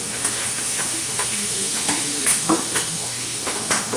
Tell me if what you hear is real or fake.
fake